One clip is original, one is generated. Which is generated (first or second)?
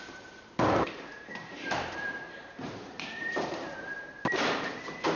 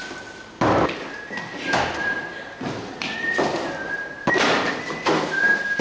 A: first